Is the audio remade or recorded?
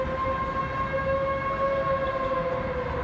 recorded